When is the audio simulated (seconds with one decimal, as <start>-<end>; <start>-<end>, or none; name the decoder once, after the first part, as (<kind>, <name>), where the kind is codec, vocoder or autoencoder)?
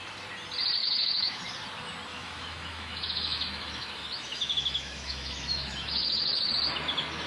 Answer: 0.8-1.4 (autoencoder, DAC-VAE); 2.1-6.5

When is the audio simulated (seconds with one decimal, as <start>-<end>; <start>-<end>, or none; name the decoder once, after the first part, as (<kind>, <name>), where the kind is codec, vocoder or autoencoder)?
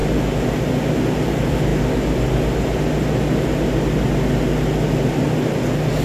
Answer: none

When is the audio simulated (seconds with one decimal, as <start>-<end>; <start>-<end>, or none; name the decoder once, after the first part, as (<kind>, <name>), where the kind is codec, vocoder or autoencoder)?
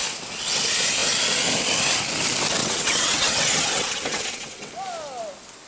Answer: 2.6-4.7 (vocoder, WaveNeXt)